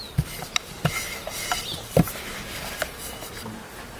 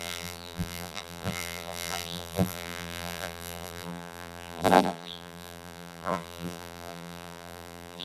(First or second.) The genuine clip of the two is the first